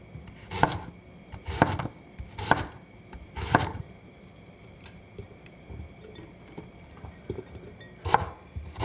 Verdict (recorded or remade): recorded